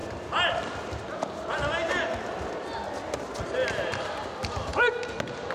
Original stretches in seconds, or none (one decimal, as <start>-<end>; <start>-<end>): 0.0-5.5